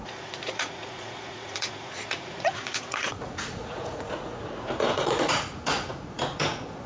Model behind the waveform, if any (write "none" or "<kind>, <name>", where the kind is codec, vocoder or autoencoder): vocoder, Vocos